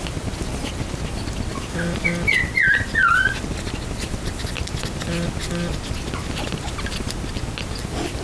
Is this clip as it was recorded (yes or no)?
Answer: yes